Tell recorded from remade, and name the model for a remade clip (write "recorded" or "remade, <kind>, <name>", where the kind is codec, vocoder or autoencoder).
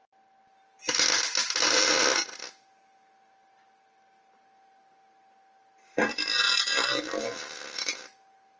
recorded